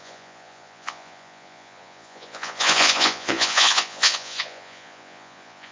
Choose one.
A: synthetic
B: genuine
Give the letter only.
A